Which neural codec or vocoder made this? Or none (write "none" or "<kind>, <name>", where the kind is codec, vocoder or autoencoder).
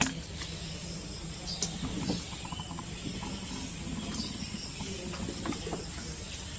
none